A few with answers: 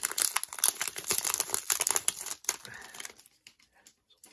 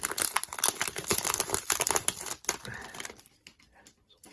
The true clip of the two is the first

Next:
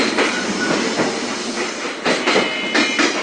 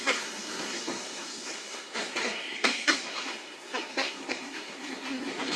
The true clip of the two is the first